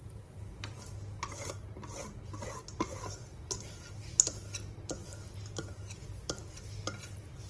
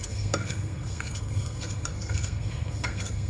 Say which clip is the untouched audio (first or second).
first